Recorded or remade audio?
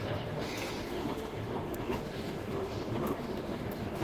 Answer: remade